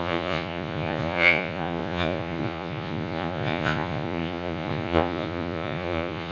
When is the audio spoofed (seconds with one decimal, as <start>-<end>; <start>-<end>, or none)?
0.0-6.3